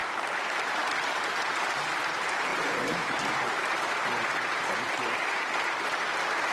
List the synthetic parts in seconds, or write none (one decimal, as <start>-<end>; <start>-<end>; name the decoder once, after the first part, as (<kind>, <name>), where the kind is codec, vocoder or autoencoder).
0.0-6.5 (vocoder, BigVGAN v2)